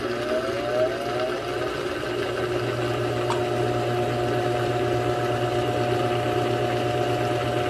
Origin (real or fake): real